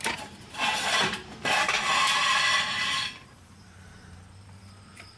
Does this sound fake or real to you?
fake